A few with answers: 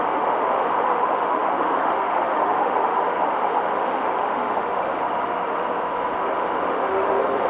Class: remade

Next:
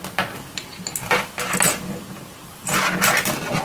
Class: recorded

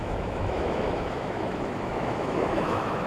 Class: remade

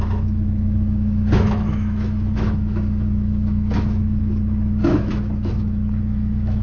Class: remade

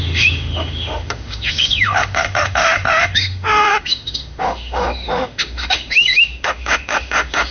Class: remade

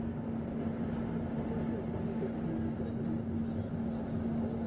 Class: recorded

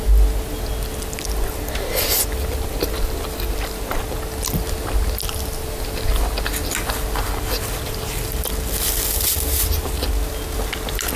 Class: recorded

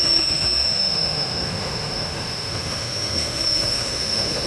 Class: remade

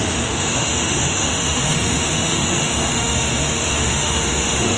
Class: remade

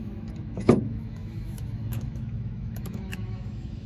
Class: remade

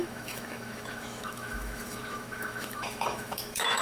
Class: remade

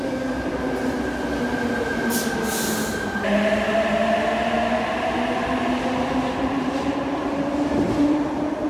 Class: recorded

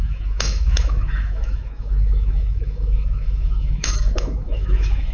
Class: remade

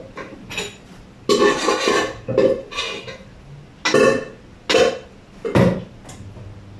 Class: recorded